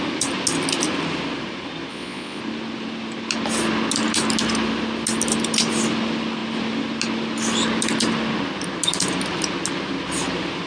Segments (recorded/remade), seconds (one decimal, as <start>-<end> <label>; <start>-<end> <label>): 0.0-1.9 recorded; 1.9-2.4 remade; 2.4-10.7 recorded